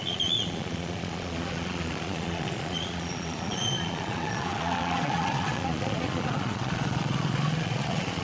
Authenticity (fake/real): fake